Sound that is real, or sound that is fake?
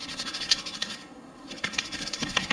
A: fake